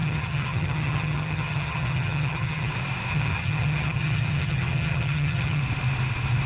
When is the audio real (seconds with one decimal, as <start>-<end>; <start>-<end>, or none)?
2.7-3.1; 5.6-6.5